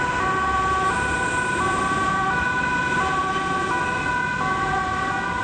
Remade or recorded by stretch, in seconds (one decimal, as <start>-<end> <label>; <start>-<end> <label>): 0.0-3.2 remade; 3.2-5.4 recorded

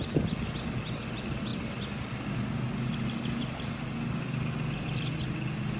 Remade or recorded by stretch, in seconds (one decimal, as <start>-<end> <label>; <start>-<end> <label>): 0.0-5.8 recorded

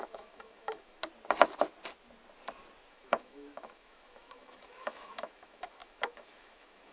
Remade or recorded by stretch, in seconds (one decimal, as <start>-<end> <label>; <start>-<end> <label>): 0.0-1.0 remade; 1.0-2.9 recorded; 2.9-6.9 remade

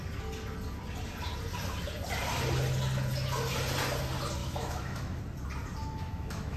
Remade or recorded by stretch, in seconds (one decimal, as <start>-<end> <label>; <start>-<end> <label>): 0.0-4.4 recorded; 4.4-5.2 remade; 5.2-5.8 recorded; 5.8-6.6 remade

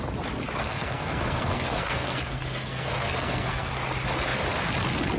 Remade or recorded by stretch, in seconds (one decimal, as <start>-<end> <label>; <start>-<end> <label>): 0.0-0.6 recorded; 0.6-3.7 remade; 3.7-5.2 recorded

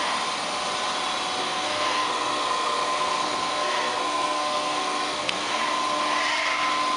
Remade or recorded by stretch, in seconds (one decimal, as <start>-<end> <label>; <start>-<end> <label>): 0.0-1.4 recorded; 1.4-5.6 remade; 5.6-7.0 recorded

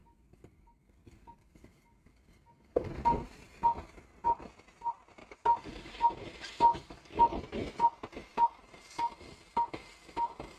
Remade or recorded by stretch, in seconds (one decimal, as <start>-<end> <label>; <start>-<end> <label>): 0.0-2.9 remade; 2.9-5.2 recorded; 5.2-5.9 remade; 5.9-6.7 recorded; 6.7-7.2 remade; 7.2-10.6 recorded